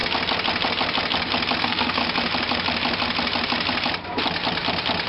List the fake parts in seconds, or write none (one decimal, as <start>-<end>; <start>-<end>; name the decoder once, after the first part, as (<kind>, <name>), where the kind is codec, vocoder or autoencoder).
1.6-2.0 (codec, SNAC)